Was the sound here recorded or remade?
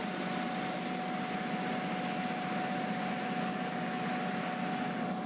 recorded